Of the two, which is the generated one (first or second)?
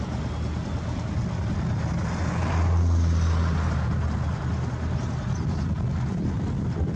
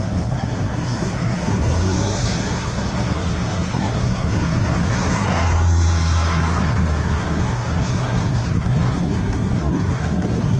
second